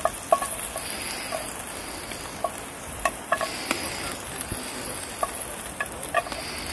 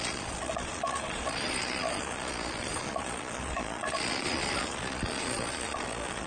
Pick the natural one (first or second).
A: first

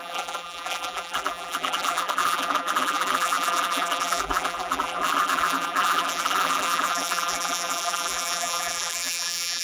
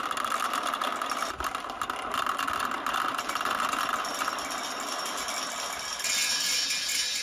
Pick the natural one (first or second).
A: second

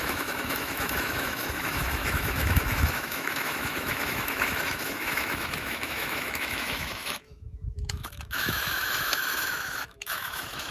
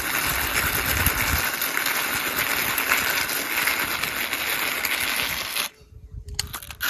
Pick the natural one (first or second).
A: second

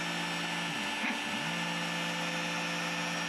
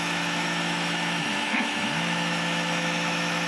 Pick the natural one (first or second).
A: first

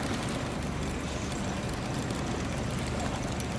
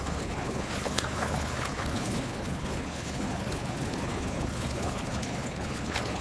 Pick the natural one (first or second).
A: first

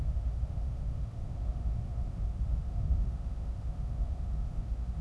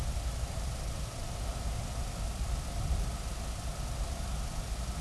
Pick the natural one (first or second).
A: second